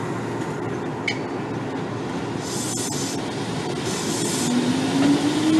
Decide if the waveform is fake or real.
real